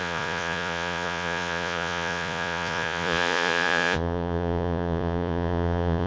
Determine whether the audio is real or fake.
fake